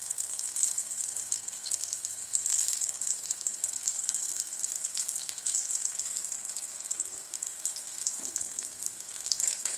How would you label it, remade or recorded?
remade